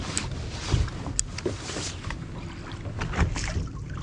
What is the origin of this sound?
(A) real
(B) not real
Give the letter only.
A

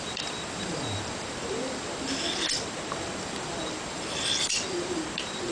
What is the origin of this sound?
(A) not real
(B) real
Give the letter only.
A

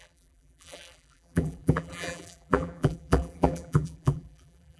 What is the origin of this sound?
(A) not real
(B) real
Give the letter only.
A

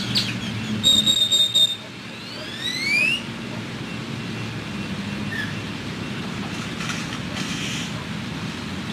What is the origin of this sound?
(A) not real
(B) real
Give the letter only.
B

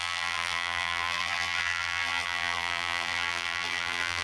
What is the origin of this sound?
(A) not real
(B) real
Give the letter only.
A